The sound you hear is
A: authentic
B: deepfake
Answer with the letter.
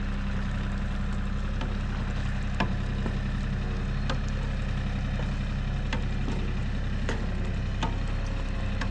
A